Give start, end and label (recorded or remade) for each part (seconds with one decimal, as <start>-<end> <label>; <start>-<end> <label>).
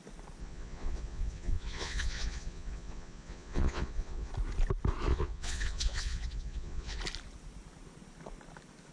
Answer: 0.0-0.4 recorded; 0.4-4.3 remade; 4.3-5.1 recorded; 5.1-7.0 remade; 7.0-8.9 recorded